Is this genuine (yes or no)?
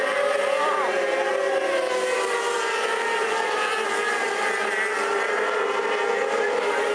yes